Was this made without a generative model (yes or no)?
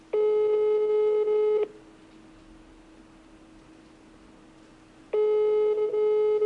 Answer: yes